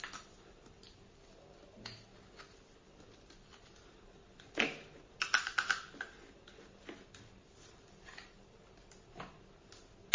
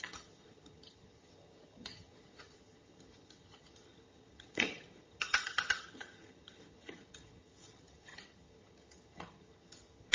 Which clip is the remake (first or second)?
second